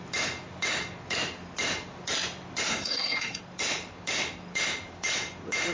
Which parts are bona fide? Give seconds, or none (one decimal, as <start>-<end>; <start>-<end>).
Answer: 0.0-2.7; 3.4-5.7